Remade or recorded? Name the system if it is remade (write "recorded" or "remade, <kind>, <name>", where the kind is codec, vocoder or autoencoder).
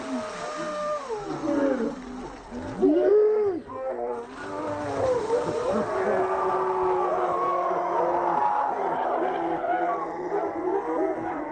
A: recorded